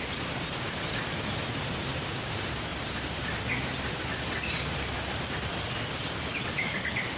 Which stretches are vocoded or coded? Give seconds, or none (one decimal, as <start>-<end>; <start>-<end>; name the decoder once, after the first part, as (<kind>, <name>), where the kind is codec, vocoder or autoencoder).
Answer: none